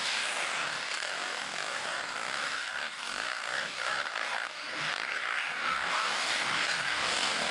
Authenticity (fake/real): fake